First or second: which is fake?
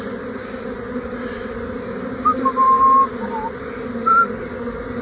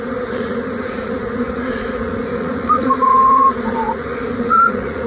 second